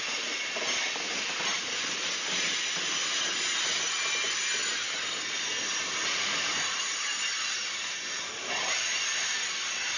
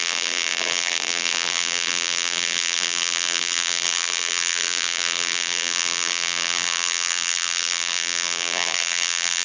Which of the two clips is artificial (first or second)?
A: second